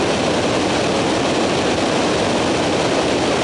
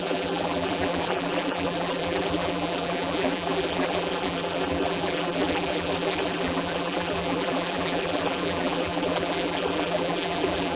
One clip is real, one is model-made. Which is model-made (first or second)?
second